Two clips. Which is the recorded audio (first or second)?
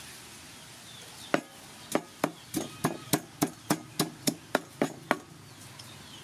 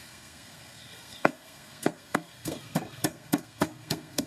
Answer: first